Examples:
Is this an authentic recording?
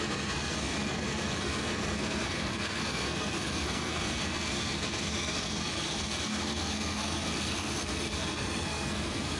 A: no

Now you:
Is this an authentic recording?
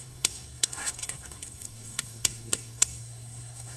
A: no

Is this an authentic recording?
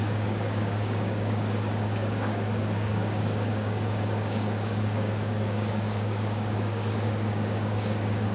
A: no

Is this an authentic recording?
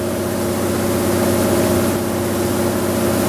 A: yes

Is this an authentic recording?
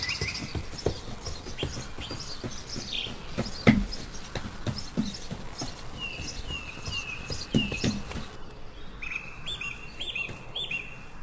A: yes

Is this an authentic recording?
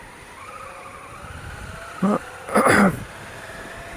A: yes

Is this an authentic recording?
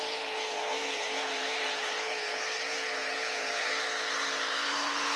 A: no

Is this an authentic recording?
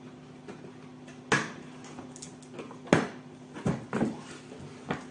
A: yes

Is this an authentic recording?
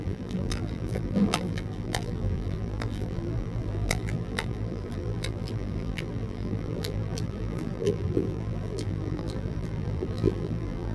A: no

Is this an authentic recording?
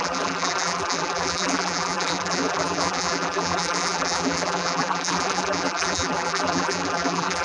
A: no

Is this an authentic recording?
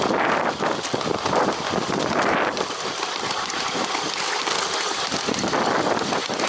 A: yes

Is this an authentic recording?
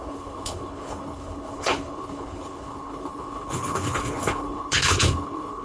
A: no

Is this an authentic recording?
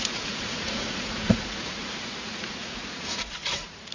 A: no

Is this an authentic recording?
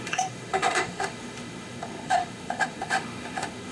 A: no